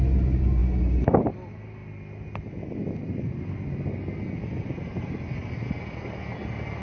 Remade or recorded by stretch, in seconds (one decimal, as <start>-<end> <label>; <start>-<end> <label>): 0.0-6.8 recorded